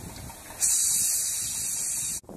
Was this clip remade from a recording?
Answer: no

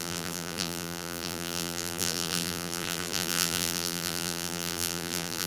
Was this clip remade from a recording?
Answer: yes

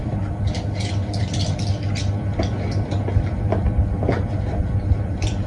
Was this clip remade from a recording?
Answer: yes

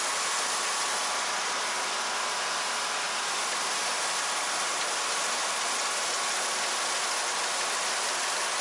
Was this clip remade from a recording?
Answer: no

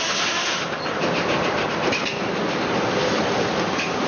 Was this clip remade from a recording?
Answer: yes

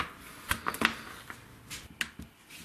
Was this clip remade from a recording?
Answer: no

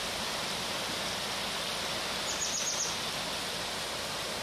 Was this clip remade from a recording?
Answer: no